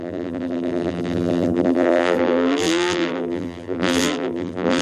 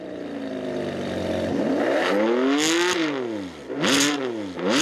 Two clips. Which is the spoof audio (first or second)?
first